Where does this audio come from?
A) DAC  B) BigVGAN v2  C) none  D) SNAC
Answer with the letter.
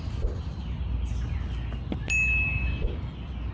C